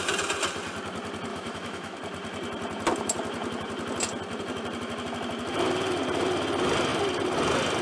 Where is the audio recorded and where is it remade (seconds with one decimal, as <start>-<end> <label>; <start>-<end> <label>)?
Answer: 0.0-1.3 recorded; 1.3-2.0 remade; 2.0-7.8 recorded